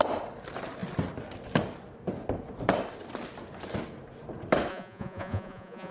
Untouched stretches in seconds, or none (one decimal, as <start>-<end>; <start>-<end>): 0.0-4.7